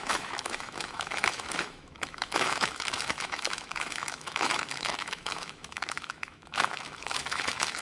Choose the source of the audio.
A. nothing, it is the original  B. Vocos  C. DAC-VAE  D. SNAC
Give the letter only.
C